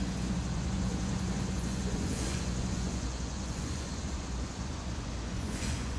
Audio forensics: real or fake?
fake